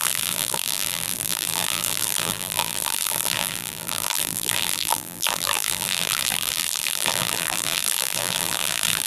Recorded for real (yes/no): no